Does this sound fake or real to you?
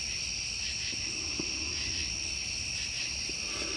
real